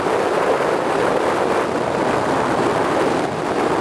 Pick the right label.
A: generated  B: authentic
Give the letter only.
B